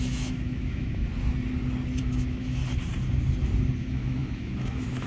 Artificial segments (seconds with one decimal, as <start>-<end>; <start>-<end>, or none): 0.0-1.1; 2.0-2.6; 3.8-5.1